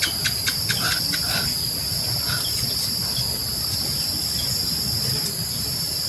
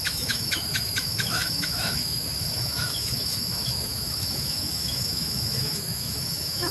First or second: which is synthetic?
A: second